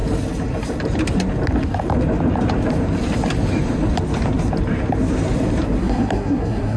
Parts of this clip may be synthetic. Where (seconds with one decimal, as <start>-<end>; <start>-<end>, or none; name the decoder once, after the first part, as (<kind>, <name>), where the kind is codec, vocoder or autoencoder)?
5.8-6.8 (codec, SNAC)

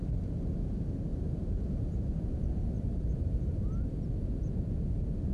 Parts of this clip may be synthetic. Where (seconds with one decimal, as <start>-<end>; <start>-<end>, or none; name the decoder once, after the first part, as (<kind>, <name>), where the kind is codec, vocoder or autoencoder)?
1.1-3.7 (vocoder, BigVGAN v2)

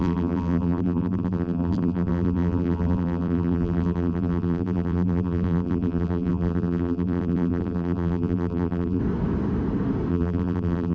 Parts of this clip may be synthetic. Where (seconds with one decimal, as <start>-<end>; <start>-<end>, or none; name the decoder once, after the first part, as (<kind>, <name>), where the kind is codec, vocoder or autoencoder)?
0.0-9.0 (vocoder, BigVGAN v2); 10.1-10.9

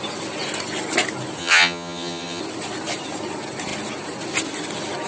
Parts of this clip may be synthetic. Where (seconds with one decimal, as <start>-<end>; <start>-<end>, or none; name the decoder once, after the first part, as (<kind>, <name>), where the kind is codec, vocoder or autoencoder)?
1.4-2.4 (vocoder, HiFi-GAN)

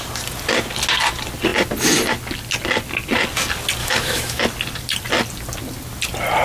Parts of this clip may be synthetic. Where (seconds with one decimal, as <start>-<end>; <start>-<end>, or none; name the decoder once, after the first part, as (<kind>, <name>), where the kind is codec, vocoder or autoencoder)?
3.8-4.4 (autoencoder, DAC-VAE)

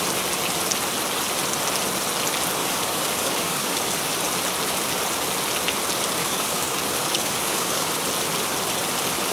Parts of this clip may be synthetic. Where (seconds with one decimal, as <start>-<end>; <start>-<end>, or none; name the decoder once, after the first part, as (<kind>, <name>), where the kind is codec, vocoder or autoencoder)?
2.6-4.1 (codec, DAC); 6.2-7.9